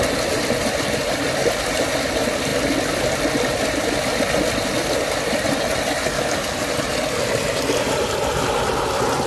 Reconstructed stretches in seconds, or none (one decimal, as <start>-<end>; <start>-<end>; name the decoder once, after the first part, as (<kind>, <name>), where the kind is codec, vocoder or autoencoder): none